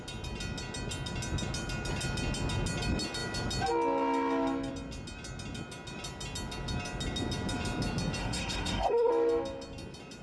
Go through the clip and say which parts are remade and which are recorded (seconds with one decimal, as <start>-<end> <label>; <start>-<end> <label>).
0.0-8.2 recorded; 8.2-9.1 remade; 9.1-10.2 recorded